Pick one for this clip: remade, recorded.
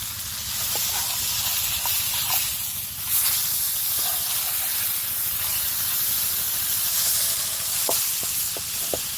recorded